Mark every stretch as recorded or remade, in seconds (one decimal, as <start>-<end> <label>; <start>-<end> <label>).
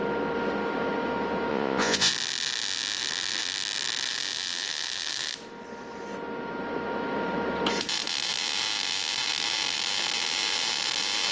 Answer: 0.0-1.5 recorded; 1.5-2.1 remade; 2.1-11.3 recorded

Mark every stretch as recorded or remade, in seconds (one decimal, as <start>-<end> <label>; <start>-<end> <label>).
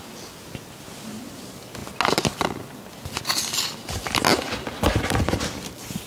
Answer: 0.0-6.1 recorded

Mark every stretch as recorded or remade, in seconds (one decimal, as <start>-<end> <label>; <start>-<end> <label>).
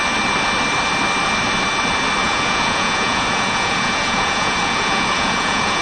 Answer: 0.0-2.2 recorded; 2.2-5.8 remade